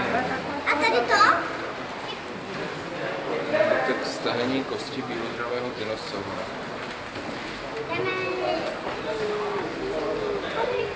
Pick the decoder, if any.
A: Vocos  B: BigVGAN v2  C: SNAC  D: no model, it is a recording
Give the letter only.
D